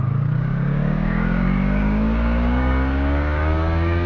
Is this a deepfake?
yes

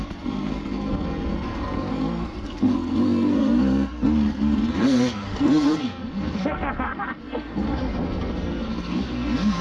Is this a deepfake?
yes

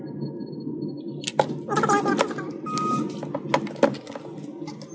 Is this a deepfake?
no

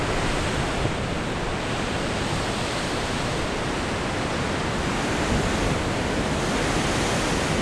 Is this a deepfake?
no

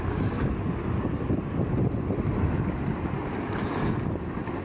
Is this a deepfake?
no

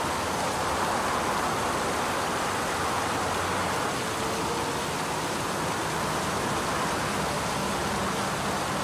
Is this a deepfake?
no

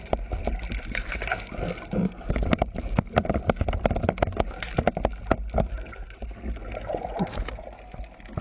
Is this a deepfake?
no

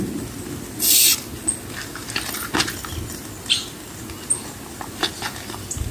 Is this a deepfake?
no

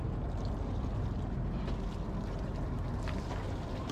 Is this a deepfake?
no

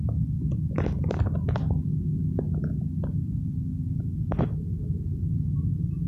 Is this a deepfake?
no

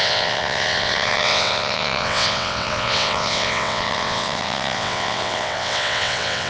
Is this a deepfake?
yes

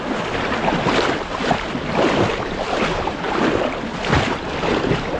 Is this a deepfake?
no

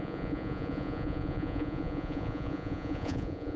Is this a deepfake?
yes